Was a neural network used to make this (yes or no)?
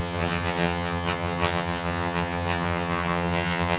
yes